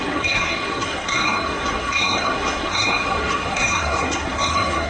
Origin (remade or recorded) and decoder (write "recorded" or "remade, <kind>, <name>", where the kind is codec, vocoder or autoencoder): remade, codec, SNAC